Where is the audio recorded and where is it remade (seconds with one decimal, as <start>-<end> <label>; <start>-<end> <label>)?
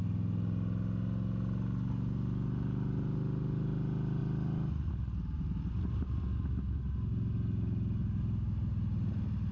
0.0-9.5 recorded